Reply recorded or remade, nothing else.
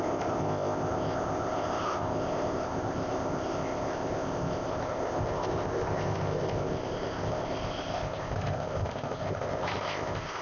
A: remade